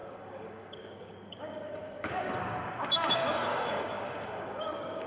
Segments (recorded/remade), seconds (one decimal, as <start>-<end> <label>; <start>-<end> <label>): 0.0-5.1 remade